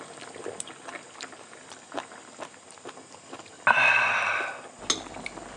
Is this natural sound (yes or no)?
yes